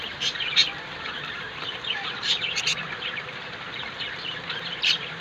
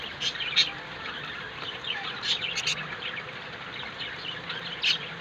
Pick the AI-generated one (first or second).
first